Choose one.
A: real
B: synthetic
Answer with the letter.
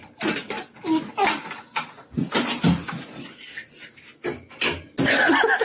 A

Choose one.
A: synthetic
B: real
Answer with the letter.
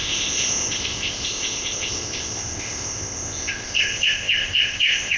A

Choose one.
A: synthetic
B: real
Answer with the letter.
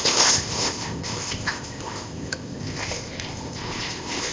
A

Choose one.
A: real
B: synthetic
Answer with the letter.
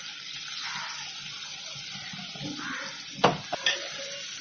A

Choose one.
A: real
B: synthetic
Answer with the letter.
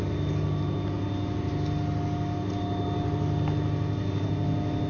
A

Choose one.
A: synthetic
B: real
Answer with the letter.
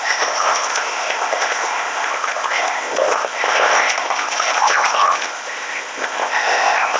A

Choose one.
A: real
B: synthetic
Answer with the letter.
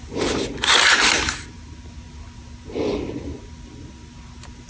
A